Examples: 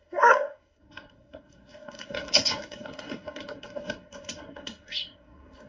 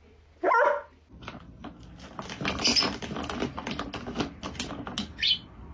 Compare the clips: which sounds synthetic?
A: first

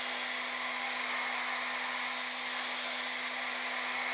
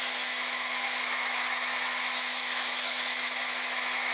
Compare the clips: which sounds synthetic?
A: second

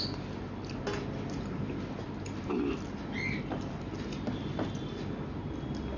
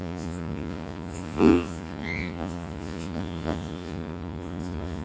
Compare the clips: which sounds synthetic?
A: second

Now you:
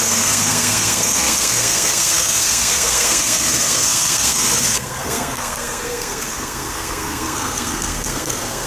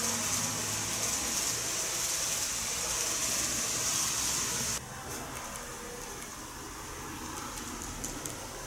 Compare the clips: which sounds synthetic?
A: first